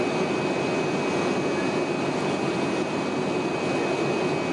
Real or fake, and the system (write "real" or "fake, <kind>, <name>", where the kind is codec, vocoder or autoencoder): real